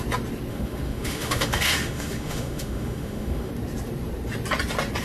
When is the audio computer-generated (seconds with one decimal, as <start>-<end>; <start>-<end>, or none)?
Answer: 0.5-3.5